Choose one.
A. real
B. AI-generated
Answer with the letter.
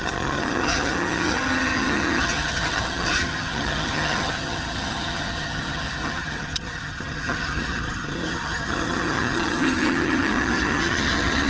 B